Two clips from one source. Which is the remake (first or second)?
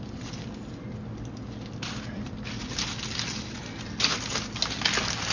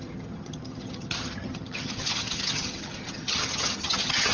second